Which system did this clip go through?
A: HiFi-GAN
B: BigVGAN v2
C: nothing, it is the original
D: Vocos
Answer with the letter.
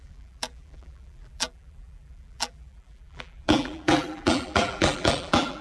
B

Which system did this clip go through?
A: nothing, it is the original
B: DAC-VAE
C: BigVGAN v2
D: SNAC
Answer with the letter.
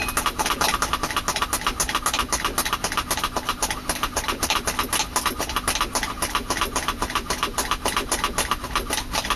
A